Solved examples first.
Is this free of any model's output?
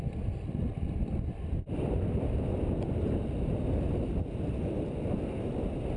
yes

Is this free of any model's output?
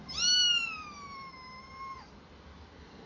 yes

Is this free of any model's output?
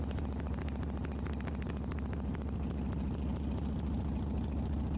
yes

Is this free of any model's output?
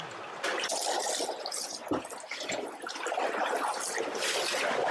yes